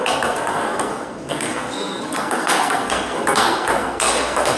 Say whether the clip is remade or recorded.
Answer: remade